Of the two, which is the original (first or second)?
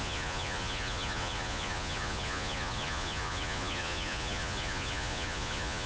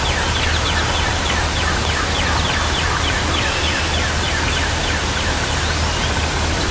second